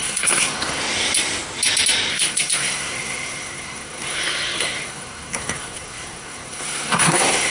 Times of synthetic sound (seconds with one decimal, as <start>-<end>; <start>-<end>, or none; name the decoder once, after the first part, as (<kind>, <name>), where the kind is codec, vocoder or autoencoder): 0.0-0.8 (codec, SNAC); 2.1-7.5